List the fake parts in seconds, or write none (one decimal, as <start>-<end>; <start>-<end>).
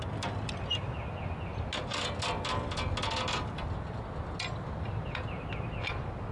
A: none